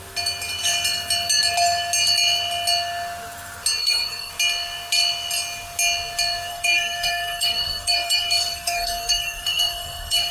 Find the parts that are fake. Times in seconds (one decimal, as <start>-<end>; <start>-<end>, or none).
3.8-4.3; 6.5-10.3